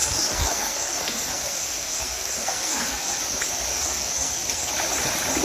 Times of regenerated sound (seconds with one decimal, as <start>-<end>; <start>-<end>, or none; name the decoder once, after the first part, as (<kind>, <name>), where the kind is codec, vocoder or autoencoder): 0.0-3.2 (codec, SNAC); 3.7-4.7